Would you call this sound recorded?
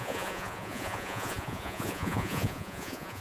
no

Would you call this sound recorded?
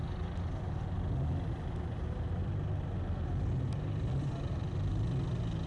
yes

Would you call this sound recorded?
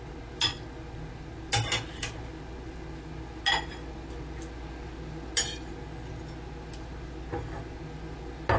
yes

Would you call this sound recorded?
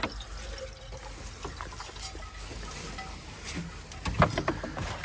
yes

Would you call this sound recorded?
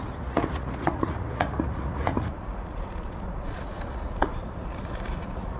no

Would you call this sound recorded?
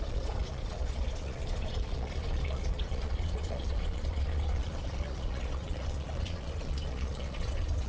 no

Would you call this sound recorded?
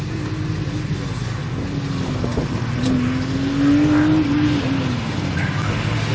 yes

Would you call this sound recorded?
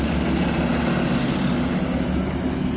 yes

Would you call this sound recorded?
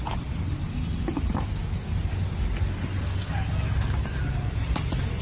yes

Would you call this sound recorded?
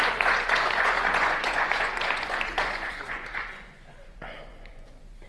no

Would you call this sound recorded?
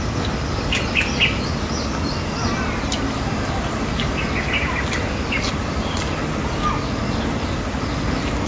yes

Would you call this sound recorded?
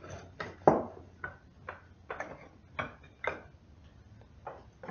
yes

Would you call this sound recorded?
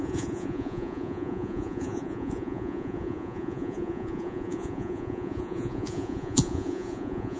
no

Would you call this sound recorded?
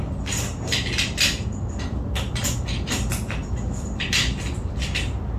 yes